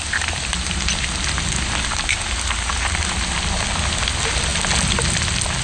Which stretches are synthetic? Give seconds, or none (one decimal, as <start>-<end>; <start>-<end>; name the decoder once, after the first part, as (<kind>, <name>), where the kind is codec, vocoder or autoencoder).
none